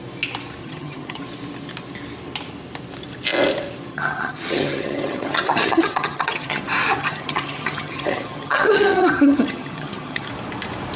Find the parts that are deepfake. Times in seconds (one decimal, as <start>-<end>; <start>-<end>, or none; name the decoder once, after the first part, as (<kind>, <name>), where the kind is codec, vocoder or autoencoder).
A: 0.6-1.2 (vocoder, HiFi-GAN); 3.9-6.6; 7.0-10.3

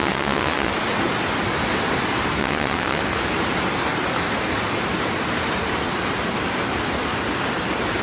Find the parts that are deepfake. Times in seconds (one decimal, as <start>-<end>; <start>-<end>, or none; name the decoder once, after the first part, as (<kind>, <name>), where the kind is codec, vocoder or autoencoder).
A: 0.0-0.7 (vocoder, WaveNeXt); 2.4-3.0

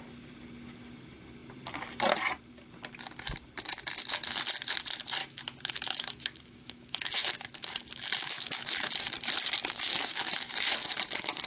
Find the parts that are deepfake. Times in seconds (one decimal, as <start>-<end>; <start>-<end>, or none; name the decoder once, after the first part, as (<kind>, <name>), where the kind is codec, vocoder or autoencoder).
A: 5.2-8.9 (autoencoder, DAC-VAE); 9.9-10.6

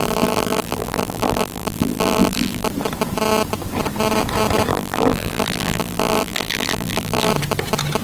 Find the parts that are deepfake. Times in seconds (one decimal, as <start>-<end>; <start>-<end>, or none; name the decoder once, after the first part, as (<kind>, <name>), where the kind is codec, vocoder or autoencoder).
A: 0.0-2.7 (vocoder, BigVGAN v2); 4.7-7.3

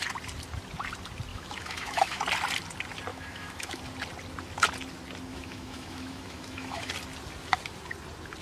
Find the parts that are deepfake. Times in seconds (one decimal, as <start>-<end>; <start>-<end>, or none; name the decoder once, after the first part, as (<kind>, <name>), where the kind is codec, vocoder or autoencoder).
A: 1.3-2.2 (autoencoder, DAC-VAE); 3.1-3.8; 5.3-6.9

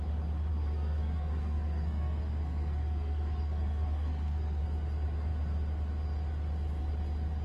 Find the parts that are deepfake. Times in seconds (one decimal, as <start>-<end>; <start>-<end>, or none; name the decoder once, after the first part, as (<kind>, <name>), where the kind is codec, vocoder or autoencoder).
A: 0.5-4.6 (codec, SNAC)

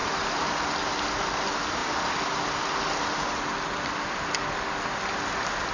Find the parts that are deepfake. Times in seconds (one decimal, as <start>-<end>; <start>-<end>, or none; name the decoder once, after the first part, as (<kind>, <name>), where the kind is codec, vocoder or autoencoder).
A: none